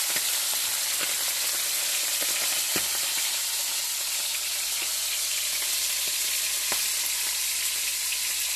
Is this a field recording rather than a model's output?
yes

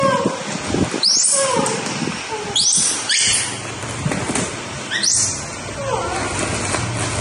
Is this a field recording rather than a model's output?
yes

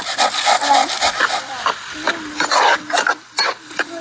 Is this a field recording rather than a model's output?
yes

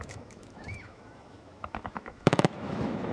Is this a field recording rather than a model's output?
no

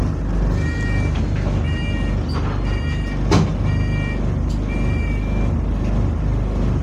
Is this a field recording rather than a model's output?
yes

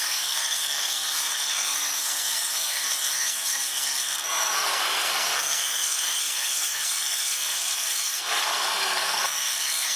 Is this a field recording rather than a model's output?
no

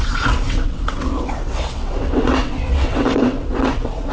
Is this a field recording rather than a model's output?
no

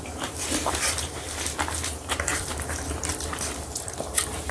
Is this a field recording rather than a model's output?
no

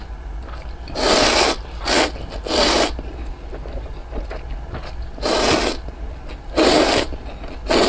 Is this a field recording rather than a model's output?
yes